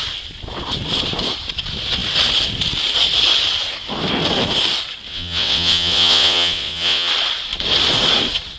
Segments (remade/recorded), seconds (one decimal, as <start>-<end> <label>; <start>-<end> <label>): 0.0-5.1 recorded; 5.1-7.1 remade; 7.1-8.6 recorded